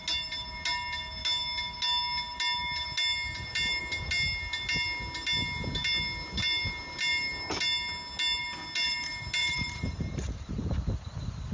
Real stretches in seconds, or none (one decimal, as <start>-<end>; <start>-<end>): 0.0-9.4; 10.7-11.5